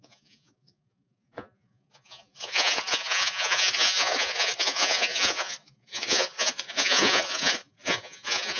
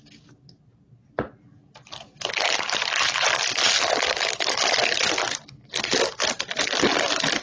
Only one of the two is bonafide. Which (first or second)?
second